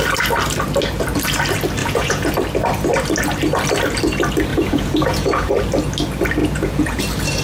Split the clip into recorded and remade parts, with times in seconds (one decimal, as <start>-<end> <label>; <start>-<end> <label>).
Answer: 0.0-1.8 recorded; 1.8-2.3 remade; 2.3-4.5 recorded; 4.5-5.5 remade; 5.5-6.4 recorded; 6.4-7.0 remade; 7.0-7.4 recorded